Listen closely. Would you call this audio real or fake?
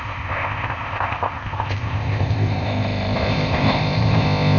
fake